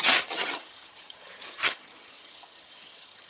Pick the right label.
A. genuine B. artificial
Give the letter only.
B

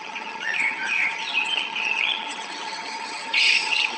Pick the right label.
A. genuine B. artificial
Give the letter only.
B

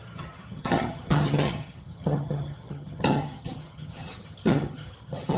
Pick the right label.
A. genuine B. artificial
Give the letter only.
B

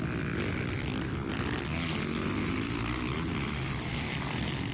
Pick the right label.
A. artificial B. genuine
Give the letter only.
B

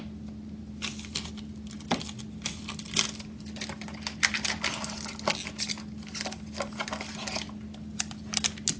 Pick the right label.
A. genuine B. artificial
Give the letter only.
A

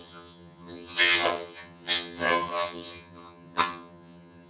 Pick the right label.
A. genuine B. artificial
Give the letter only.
B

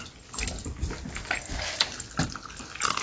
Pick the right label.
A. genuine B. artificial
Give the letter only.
A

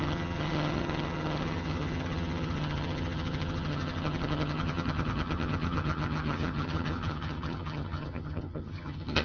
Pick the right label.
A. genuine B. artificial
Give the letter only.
B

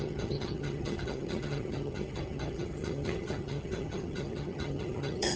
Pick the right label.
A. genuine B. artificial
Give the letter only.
B